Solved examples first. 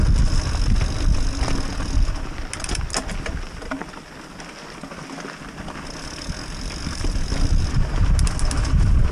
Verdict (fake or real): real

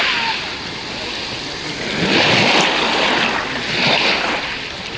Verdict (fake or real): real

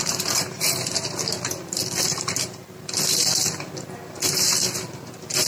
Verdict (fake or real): fake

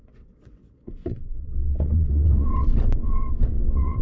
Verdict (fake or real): fake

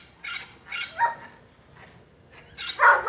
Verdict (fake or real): real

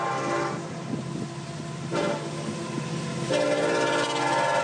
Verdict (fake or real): real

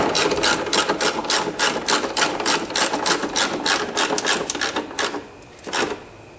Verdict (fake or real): real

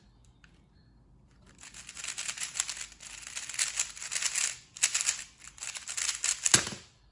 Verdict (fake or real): real